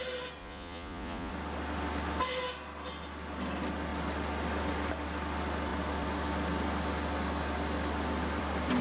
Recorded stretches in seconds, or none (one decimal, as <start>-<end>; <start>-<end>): 0.0-0.4; 1.3-8.8